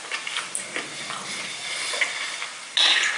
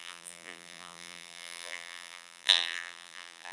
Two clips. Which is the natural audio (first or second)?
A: first